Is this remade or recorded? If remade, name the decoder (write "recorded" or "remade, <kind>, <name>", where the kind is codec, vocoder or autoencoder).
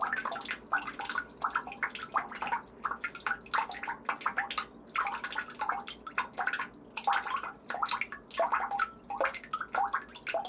recorded